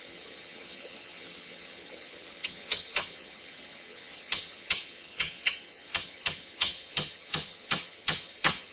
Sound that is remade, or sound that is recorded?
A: remade